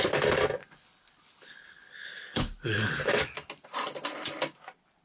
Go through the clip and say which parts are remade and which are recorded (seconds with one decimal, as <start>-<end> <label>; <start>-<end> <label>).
0.0-0.6 recorded; 0.6-3.1 remade; 3.1-5.0 recorded